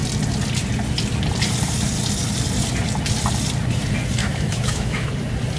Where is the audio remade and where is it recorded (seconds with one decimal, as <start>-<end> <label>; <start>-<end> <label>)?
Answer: 0.0-4.2 recorded; 4.2-5.1 remade; 5.1-5.6 recorded